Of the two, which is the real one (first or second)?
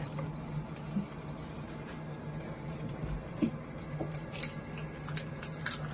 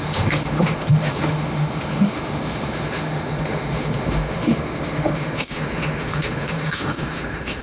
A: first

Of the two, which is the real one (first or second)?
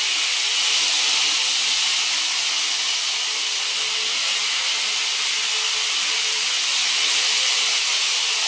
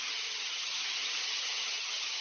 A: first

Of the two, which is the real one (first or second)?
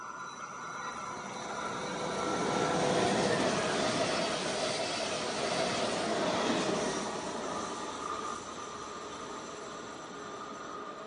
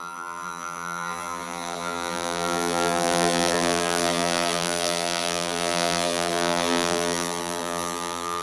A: first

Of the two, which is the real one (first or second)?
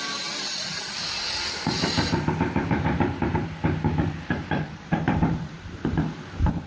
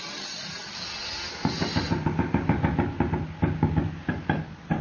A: second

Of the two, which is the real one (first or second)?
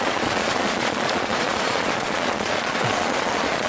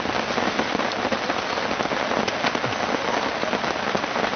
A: second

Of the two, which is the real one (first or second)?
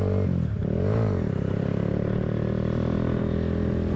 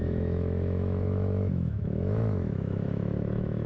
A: first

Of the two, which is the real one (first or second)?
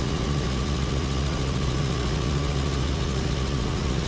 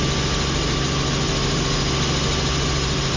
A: second